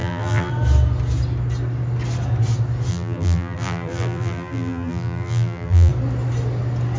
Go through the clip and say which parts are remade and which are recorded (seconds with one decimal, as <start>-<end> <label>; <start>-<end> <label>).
0.0-0.5 remade; 0.5-2.9 recorded; 2.9-5.9 remade; 5.9-7.0 recorded

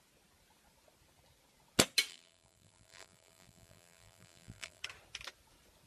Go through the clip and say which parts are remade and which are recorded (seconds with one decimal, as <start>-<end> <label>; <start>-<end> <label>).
0.0-2.1 recorded; 2.1-4.8 remade; 4.8-5.9 recorded

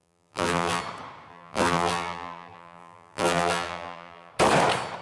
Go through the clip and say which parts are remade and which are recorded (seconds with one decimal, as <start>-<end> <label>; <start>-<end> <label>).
0.0-0.8 remade; 0.8-1.3 recorded; 1.3-4.3 remade; 4.3-5.0 recorded

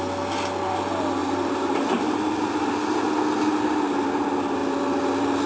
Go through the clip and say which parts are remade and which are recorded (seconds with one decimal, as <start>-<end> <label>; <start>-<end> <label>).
0.0-1.2 recorded; 1.2-2.8 remade; 2.8-5.5 recorded

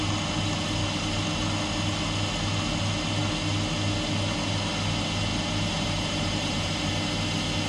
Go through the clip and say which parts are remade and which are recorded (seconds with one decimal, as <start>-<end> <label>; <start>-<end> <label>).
0.0-5.3 recorded; 5.3-6.9 remade; 6.9-7.7 recorded

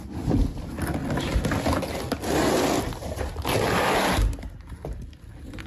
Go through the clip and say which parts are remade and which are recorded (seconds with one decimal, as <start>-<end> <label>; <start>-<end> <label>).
0.0-1.0 recorded; 1.0-1.8 remade; 1.8-5.7 recorded

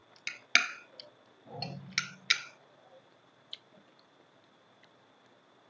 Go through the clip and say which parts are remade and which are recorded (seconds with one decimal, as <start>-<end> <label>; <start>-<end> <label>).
0.0-2.3 recorded; 2.3-5.7 remade

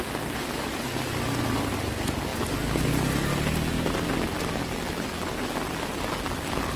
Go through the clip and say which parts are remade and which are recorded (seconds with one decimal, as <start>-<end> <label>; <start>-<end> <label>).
0.0-6.8 recorded